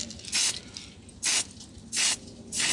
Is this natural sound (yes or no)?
yes